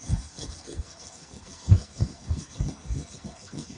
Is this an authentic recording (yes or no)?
no